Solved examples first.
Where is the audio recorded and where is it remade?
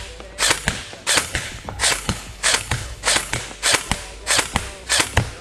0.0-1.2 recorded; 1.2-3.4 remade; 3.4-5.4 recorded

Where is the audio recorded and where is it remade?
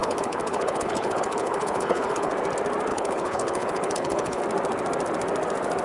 0.0-2.3 remade; 2.3-2.9 recorded; 2.9-4.4 remade; 4.4-5.8 recorded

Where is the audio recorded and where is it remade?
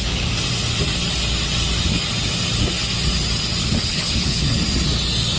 0.0-3.6 recorded; 3.6-4.6 remade; 4.6-5.4 recorded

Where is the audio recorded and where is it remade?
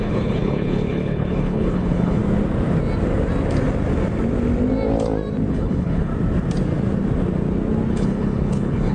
0.0-2.2 remade; 2.2-5.5 recorded; 5.5-6.1 remade; 6.1-7.9 recorded; 7.9-8.9 remade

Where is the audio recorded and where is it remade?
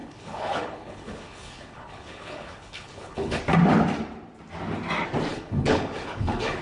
0.0-3.4 remade; 3.4-5.3 recorded; 5.3-6.6 remade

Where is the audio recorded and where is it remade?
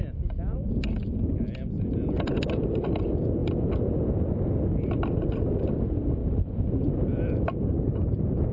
0.0-8.5 recorded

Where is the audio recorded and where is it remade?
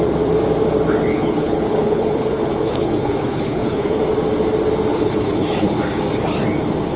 0.0-1.1 recorded; 1.1-4.0 remade; 4.0-4.9 recorded; 4.9-5.8 remade; 5.8-7.0 recorded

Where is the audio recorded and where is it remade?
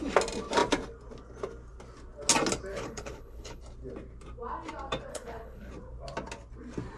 0.0-2.7 recorded; 2.7-3.6 remade; 3.6-5.1 recorded; 5.1-5.7 remade; 5.7-7.0 recorded